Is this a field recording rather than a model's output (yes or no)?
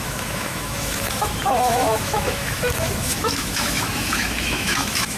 no